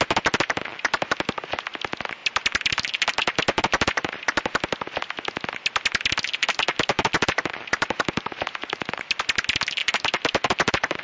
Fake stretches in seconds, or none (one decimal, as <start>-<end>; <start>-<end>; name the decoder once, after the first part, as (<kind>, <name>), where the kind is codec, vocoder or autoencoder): 2.2-4.2 (vocoder, BigVGAN v2); 6.4-9.2; 9.8-11.0